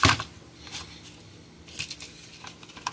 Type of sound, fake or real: real